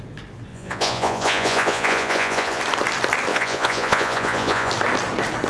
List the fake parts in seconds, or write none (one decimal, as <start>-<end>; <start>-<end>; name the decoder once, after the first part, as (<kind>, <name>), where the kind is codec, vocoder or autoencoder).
0.5-2.6 (vocoder, Vocos); 3.3-4.7